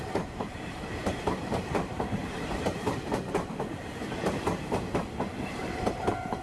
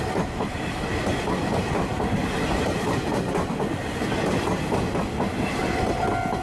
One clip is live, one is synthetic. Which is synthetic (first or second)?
first